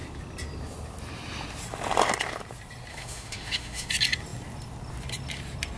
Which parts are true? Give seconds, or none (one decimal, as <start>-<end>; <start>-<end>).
0.0-2.9; 3.9-5.8